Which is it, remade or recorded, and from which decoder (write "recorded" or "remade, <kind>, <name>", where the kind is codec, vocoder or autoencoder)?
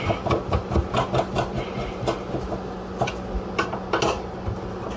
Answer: recorded